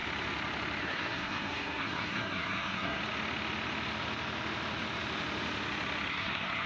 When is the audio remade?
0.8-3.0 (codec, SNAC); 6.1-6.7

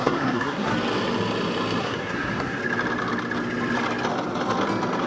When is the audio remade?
0.0-0.7 (codec, SNAC); 1.8-2.6